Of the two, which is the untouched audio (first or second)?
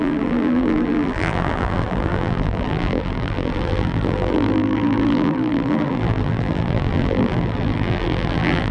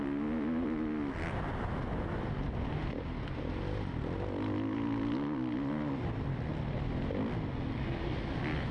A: second